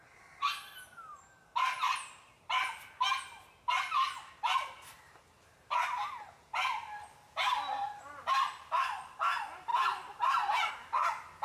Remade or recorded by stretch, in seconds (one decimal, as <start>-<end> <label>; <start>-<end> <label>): 0.0-9.7 recorded; 9.7-10.7 remade; 10.7-11.4 recorded